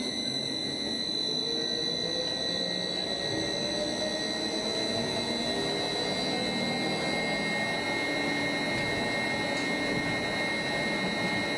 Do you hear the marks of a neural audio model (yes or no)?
no